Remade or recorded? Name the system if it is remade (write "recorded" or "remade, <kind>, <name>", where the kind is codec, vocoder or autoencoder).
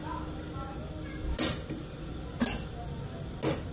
recorded